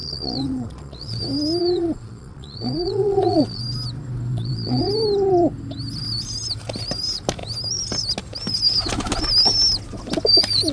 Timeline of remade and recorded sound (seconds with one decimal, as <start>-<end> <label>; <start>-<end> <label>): 0.0-1.2 remade; 1.2-1.6 recorded; 1.6-3.6 remade; 3.6-4.3 recorded; 4.3-4.9 remade; 4.9-10.7 recorded